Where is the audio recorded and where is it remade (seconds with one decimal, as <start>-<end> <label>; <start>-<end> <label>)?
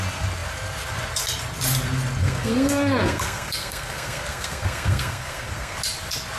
0.0-2.2 recorded; 2.2-5.8 remade; 5.8-6.4 recorded